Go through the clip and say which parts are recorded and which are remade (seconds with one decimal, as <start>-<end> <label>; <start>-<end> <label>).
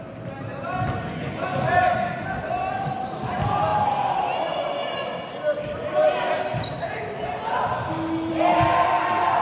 0.0-9.4 recorded